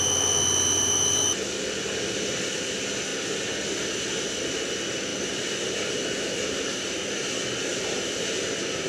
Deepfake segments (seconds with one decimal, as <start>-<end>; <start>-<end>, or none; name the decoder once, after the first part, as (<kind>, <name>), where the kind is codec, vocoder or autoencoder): 5.1-6.7 (vocoder, BigVGAN v2); 7.7-8.9